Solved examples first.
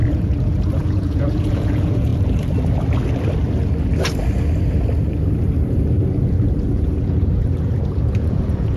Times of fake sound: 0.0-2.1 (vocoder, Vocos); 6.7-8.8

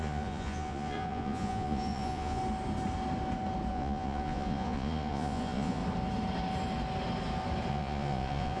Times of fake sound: 0.0-2.4 (vocoder, Vocos); 3.7-5.8; 7.7-8.6